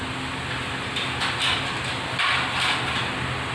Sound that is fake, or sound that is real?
real